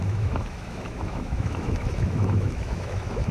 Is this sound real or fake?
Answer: fake